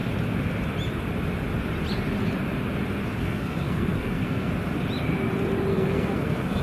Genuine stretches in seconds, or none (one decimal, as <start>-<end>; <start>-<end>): 0.0-3.2; 4.5-5.7